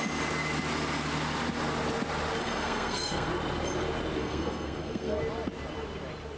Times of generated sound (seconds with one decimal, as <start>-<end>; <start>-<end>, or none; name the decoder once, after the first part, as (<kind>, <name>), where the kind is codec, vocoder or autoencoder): 2.4-3.3 (codec, SNAC); 4.2-5.2